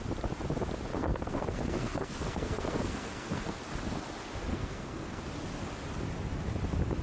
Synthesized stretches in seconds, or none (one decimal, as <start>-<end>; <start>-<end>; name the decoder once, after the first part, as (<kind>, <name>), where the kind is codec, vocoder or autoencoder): 0.9-3.6 (codec, SNAC); 4.5-5.2